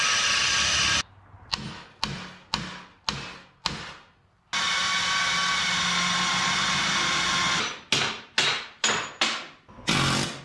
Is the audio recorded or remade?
recorded